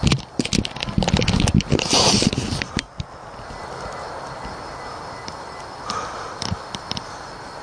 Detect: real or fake real